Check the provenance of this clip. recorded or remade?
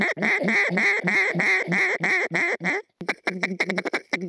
recorded